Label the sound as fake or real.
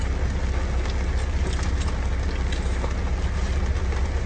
real